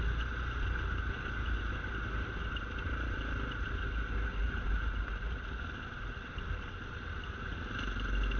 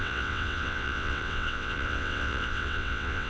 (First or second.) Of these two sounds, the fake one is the second